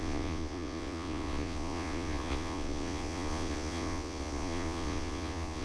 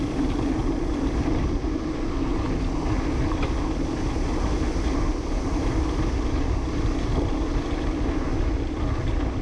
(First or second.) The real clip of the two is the second